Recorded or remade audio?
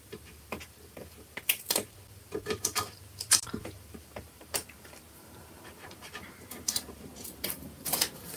remade